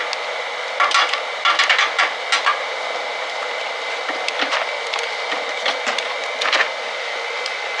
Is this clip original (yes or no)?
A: yes